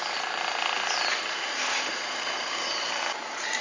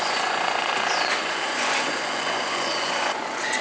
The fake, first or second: second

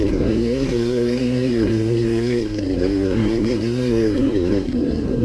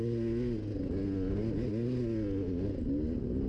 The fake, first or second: first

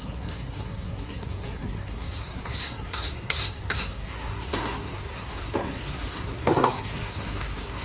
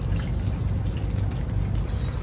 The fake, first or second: first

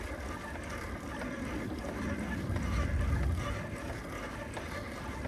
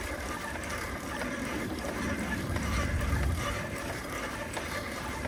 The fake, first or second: second